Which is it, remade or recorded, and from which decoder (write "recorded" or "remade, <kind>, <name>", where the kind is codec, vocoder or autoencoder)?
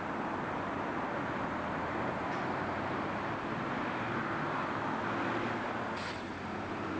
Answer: recorded